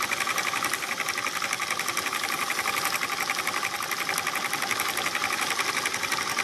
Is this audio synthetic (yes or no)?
no